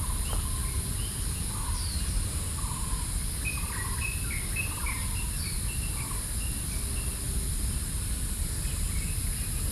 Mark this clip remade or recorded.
recorded